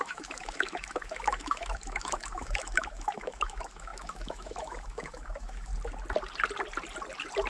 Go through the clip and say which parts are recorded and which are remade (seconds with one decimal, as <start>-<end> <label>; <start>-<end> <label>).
0.0-5.7 remade; 5.7-7.5 recorded